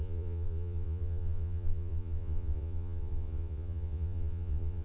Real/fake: fake